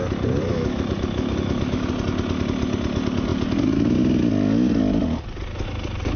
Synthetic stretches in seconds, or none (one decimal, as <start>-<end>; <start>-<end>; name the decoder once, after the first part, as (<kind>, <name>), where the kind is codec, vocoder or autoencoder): 0.5-1.9 (autoencoder, DAC-VAE)